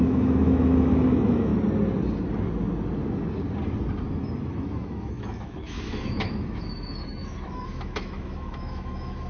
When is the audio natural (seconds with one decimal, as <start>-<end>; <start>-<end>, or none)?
1.5-4.5